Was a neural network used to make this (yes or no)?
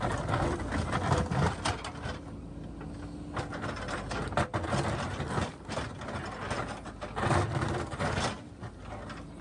no